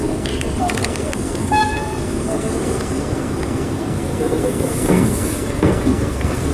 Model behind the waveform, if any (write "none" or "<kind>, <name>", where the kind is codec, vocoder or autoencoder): codec, SNAC